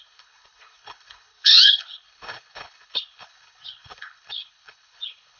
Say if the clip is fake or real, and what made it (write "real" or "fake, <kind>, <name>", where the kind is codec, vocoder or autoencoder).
fake, codec, HILCodec